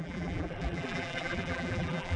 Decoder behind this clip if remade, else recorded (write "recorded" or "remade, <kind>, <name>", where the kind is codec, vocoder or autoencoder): remade, vocoder, BigVGAN v2